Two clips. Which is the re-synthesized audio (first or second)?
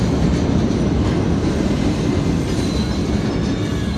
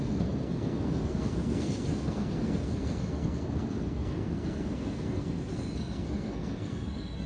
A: second